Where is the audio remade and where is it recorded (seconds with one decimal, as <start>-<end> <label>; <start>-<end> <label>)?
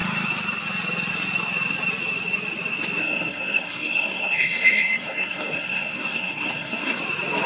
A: 0.0-3.0 recorded; 3.0-7.0 remade; 7.0-7.5 recorded